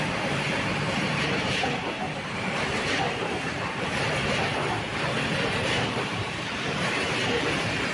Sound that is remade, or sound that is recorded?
remade